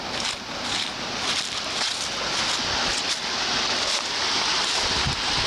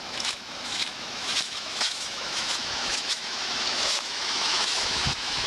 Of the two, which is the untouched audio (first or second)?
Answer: first